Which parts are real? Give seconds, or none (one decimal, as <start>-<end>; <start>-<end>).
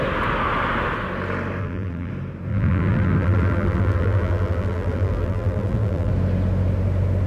0.0-1.6; 2.1-2.5; 6.1-7.3